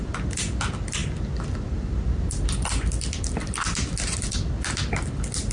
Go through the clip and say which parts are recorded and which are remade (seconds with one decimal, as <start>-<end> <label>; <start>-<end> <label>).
0.0-5.5 recorded